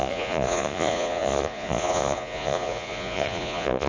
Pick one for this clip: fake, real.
fake